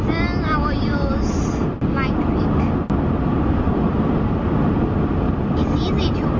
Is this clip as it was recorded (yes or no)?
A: yes